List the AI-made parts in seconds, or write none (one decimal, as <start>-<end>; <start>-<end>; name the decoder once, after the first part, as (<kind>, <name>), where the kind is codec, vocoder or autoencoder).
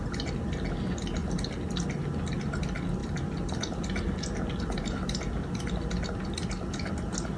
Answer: none